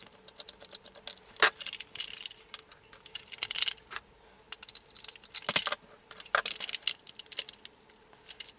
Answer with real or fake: real